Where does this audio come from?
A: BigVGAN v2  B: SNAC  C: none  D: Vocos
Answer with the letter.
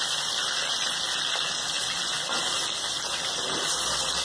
C